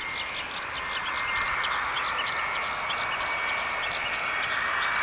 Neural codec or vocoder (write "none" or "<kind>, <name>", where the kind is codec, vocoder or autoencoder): none